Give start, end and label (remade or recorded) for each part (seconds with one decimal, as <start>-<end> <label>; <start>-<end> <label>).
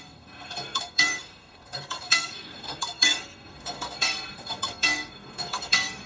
0.0-6.1 remade